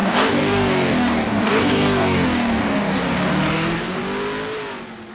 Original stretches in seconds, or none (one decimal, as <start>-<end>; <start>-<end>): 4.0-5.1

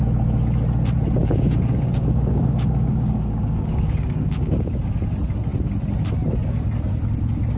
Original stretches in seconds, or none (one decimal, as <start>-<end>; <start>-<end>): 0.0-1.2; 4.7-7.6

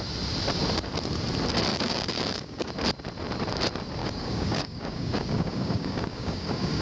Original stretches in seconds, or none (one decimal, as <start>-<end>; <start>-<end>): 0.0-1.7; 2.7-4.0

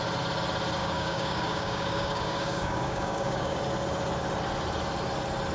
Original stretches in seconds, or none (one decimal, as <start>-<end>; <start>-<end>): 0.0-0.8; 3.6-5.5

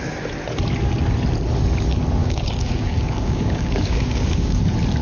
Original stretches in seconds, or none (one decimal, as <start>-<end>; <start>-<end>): 0.0-2.2; 4.6-5.0

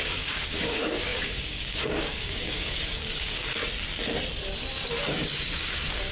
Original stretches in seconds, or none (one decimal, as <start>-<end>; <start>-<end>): 3.6-5.1

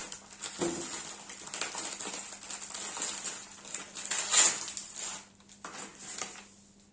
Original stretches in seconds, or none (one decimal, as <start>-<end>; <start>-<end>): 0.0-6.9

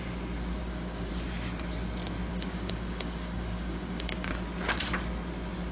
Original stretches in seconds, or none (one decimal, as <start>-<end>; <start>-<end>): 0.0-0.6; 1.1-2.3; 4.3-5.7